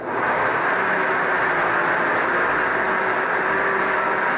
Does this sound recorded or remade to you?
recorded